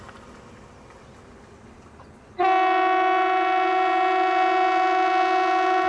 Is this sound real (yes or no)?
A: yes